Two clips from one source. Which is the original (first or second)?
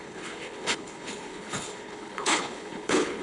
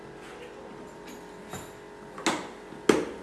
second